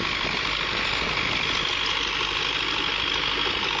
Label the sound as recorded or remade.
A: recorded